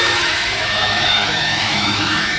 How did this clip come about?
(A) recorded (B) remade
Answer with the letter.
B